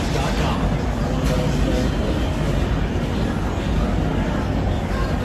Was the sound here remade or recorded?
recorded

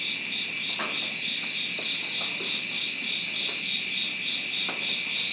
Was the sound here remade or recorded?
recorded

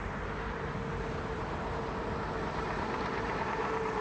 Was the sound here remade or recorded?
remade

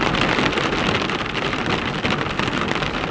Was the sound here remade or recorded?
recorded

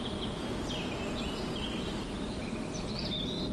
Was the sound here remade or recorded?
recorded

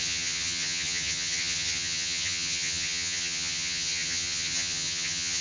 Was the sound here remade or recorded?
remade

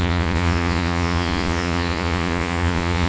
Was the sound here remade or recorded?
remade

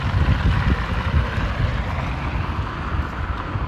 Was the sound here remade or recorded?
recorded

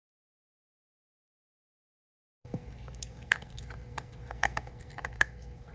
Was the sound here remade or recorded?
remade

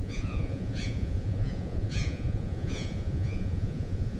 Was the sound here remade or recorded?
remade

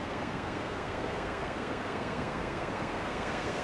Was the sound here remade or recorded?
remade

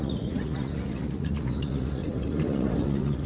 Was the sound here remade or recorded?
remade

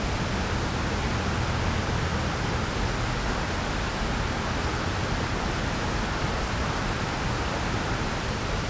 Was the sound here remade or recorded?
remade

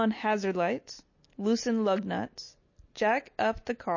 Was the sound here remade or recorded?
recorded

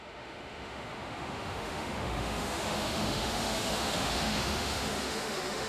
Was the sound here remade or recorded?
remade